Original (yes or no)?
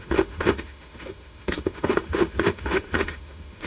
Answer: no